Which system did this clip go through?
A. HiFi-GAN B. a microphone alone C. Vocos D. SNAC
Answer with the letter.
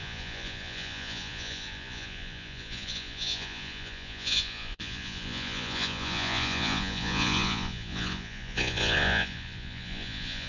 C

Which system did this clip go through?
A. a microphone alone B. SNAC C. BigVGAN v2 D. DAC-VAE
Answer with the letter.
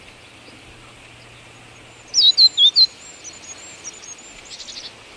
A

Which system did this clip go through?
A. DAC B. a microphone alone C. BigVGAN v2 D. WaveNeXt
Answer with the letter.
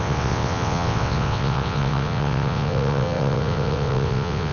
D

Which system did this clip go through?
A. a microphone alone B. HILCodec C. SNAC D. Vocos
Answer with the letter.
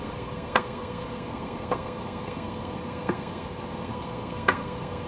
C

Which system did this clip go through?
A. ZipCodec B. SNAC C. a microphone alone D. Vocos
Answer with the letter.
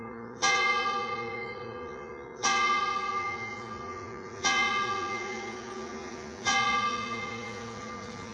D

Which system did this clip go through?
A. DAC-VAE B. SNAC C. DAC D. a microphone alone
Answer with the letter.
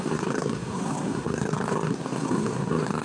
B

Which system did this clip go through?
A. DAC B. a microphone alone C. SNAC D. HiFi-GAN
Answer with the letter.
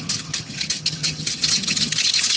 D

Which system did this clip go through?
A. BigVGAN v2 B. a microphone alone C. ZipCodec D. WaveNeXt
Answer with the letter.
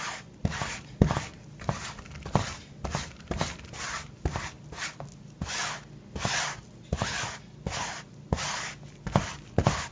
B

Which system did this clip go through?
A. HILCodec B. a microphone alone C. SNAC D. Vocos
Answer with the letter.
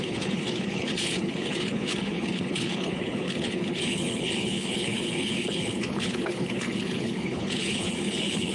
A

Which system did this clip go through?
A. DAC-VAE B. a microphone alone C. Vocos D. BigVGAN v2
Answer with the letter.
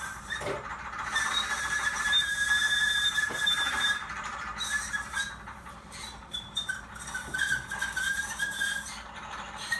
D